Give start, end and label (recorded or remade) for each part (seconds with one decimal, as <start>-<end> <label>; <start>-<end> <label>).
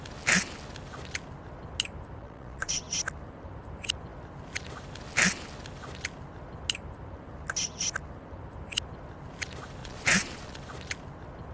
0.0-2.2 recorded; 2.2-2.8 remade; 2.8-9.8 recorded; 9.8-10.6 remade; 10.6-11.5 recorded